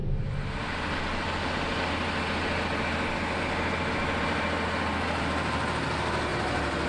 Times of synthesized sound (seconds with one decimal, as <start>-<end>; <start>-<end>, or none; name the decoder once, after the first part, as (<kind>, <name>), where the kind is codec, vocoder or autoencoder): 0.0-0.5 (vocoder, BigVGAN v2)